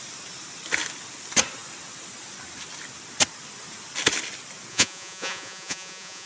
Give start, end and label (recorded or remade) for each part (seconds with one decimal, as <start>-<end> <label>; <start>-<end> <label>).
0.0-4.7 recorded; 4.7-6.3 remade